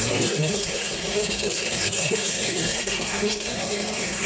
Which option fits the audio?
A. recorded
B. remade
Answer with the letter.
B